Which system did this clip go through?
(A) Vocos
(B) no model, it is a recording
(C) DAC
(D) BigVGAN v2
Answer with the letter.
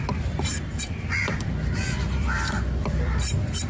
D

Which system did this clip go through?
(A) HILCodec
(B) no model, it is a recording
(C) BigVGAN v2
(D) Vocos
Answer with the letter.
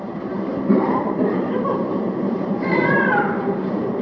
C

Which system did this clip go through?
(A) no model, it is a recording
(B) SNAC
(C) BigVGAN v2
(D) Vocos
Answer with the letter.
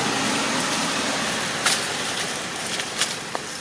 C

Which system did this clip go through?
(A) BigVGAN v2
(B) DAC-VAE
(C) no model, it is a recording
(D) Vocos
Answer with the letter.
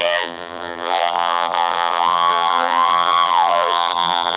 A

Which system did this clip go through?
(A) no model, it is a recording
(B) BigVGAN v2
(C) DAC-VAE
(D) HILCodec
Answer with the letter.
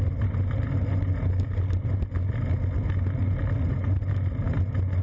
A